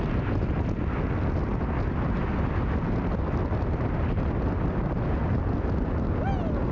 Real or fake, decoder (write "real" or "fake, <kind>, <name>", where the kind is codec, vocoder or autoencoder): real